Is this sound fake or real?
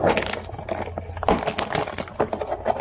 real